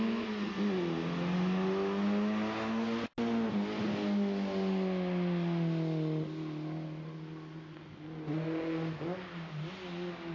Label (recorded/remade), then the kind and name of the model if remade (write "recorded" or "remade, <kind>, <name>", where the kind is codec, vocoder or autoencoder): recorded